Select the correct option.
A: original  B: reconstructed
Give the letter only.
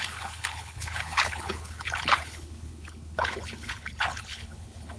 B